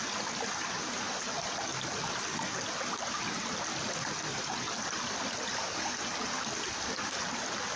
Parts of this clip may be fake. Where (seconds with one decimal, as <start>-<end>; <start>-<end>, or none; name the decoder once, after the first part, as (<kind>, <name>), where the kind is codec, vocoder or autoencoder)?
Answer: none